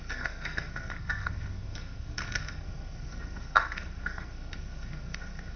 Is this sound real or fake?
fake